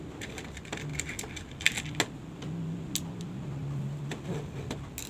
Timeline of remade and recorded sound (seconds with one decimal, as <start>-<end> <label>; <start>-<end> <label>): 0.0-5.1 recorded